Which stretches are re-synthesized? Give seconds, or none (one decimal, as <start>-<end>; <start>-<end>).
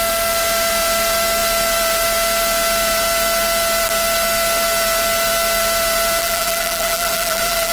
6.2-7.7